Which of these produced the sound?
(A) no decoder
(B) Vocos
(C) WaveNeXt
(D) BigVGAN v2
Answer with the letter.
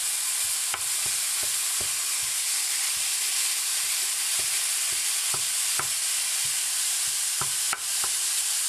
A